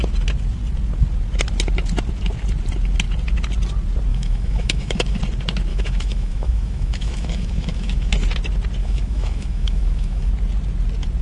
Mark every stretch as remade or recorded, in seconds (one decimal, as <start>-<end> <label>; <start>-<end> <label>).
0.0-4.1 recorded; 4.1-5.2 remade; 5.2-5.7 recorded; 5.7-8.1 remade; 8.1-8.8 recorded; 8.8-10.3 remade; 10.3-11.2 recorded